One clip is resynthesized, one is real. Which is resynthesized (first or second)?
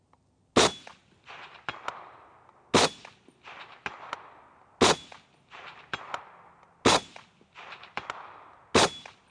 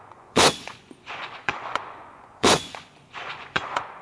second